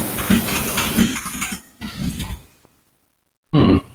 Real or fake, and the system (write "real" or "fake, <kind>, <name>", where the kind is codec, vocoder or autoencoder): real